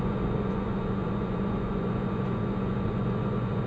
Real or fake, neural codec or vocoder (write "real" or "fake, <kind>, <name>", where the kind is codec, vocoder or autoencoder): fake, vocoder, Vocos